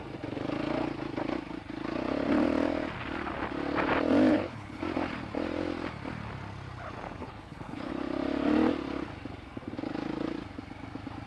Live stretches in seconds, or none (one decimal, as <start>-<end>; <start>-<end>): 0.0-4.3; 4.8-7.2; 7.9-11.3